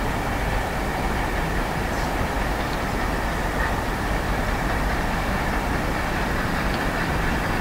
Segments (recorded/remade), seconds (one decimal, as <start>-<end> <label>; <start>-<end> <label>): 0.0-0.9 recorded; 0.9-2.6 remade; 2.6-3.4 recorded; 3.4-5.3 remade; 5.3-7.6 recorded